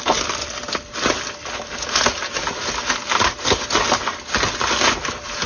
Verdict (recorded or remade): recorded